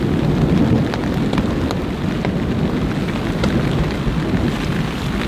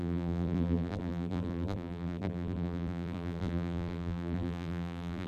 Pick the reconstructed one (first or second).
second